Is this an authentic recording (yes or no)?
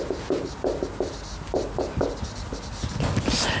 yes